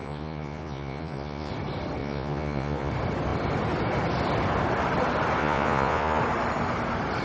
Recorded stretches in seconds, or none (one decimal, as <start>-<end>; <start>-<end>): 1.5-2.0; 2.9-5.4; 6.2-7.2